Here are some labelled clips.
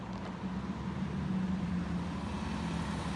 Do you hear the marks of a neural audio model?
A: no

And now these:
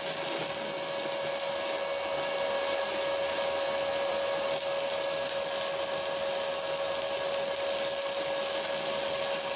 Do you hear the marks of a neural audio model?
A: no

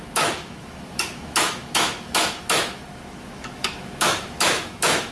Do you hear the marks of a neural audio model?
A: yes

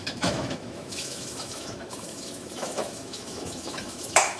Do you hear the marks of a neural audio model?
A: yes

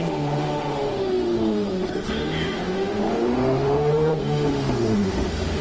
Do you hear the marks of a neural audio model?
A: yes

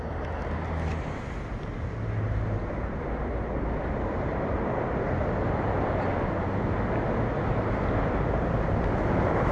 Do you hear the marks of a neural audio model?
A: no